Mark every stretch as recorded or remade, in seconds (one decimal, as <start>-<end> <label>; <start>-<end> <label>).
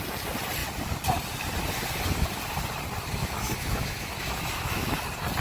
0.0-3.2 recorded; 3.2-4.9 remade; 4.9-5.4 recorded